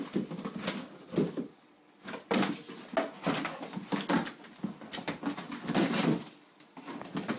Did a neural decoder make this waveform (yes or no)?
no